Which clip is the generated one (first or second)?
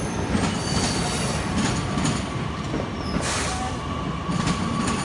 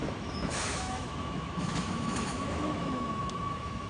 second